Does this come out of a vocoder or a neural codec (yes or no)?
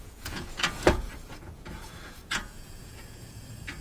yes